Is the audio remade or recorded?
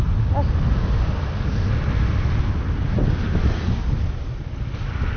recorded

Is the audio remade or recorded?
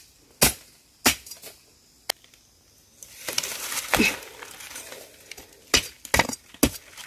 recorded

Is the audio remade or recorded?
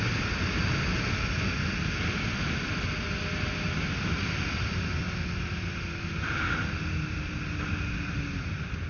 recorded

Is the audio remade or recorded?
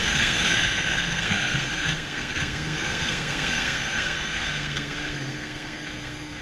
remade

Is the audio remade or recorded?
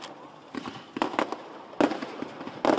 recorded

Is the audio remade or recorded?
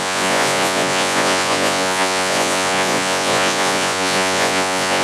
remade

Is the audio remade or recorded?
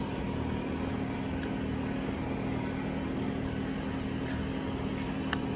recorded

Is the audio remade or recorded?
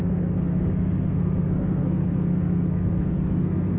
remade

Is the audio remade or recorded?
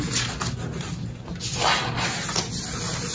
recorded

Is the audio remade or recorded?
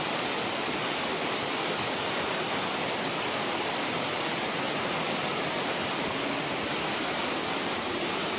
recorded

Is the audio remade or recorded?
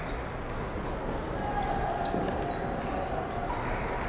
recorded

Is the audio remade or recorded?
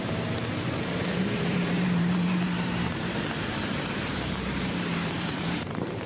remade